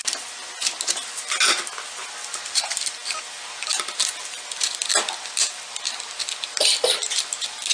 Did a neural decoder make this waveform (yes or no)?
no